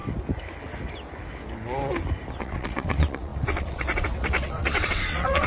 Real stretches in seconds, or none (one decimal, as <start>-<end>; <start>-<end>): 0.0-2.3